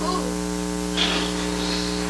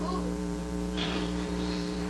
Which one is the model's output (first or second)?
second